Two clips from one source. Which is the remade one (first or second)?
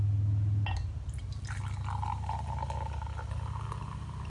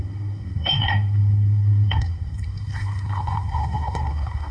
second